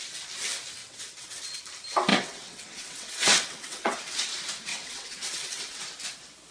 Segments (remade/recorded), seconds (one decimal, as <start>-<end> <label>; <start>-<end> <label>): 0.0-0.8 recorded; 0.8-1.4 remade; 1.4-2.1 recorded; 2.1-4.0 remade; 4.0-4.7 recorded; 4.7-5.8 remade; 5.8-6.5 recorded